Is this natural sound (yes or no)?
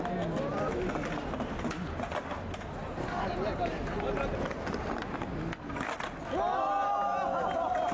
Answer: yes